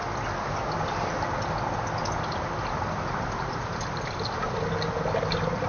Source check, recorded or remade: recorded